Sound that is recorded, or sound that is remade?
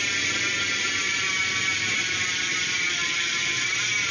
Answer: recorded